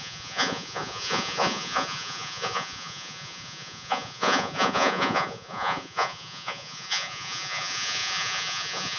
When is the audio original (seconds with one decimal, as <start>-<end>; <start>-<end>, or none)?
none